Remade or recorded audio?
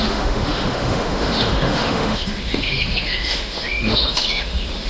remade